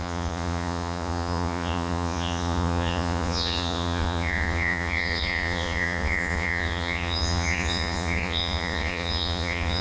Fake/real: fake